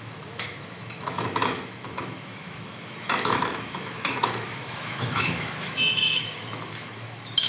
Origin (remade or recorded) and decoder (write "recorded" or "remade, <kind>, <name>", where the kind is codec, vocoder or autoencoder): remade, autoencoder, DAC-VAE